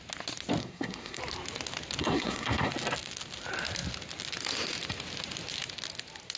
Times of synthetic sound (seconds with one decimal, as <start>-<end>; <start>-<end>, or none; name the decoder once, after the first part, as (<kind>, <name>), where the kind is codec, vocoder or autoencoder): 0.6-1.2 (codec, SNAC); 2.0-2.7